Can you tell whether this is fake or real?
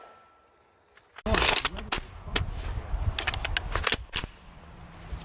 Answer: real